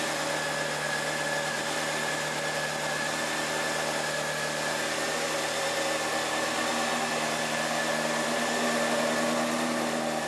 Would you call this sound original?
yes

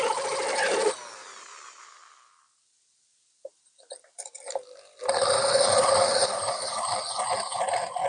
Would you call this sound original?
yes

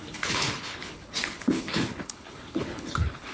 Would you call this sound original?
no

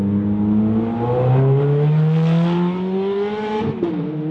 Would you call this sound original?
yes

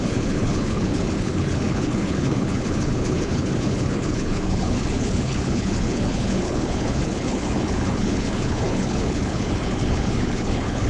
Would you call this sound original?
no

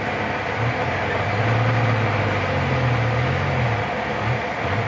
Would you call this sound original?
yes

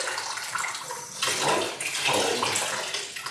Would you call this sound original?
yes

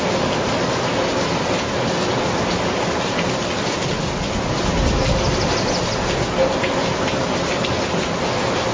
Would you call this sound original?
yes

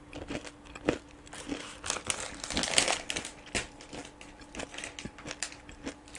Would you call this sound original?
yes